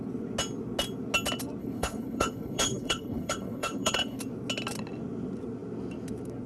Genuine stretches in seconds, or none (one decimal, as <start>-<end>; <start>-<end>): 0.0-1.6; 4.2-6.5

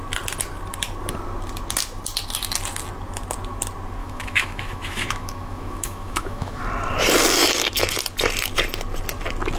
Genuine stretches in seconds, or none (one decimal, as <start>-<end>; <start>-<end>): 0.0-4.0; 6.6-9.6

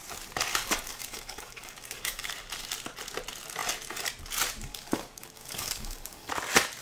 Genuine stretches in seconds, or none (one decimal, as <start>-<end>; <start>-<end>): 0.0-0.5; 2.3-4.7; 6.3-6.8

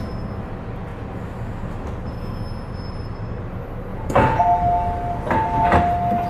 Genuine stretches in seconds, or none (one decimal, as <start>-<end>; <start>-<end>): 0.0-3.9; 4.4-6.3

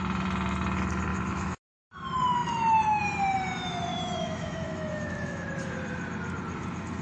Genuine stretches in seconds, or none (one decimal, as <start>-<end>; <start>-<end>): 0.0-1.1; 1.9-3.9; 5.5-7.0

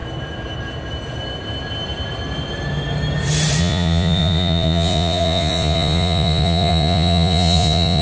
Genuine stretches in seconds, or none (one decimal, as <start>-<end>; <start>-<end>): 0.0-3.6

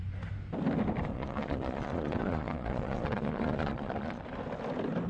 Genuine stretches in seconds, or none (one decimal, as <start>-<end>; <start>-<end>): 0.0-1.1; 4.2-5.1